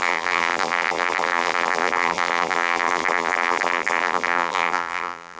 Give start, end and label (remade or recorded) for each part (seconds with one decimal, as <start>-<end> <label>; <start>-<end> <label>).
0.0-5.4 remade